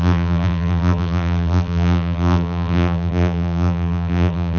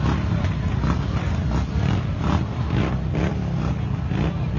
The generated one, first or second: first